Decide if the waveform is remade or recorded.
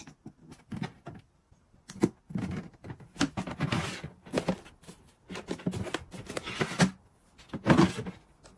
recorded